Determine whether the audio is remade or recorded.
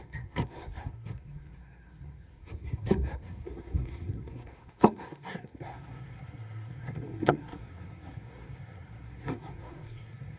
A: remade